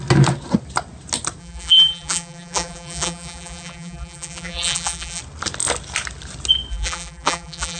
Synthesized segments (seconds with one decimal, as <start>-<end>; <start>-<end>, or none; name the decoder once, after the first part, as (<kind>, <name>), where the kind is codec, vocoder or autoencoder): 1.4-5.2 (vocoder, BigVGAN v2); 6.7-7.8